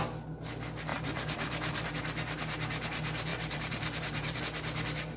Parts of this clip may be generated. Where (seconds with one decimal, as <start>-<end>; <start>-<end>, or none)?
0.9-1.9; 3.3-4.4